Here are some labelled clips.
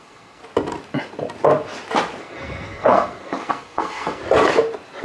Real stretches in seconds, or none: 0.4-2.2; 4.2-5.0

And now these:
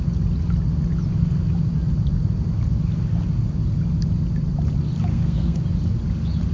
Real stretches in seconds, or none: 0.0-5.1; 5.6-6.5

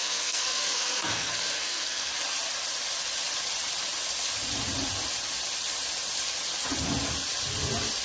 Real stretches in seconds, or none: 2.1-8.0

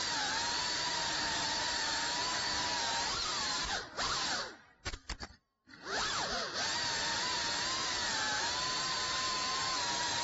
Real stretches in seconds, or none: none

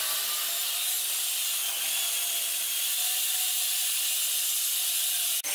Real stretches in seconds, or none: 0.0-5.5